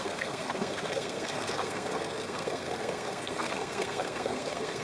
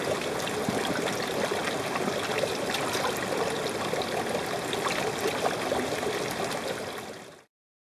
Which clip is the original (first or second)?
second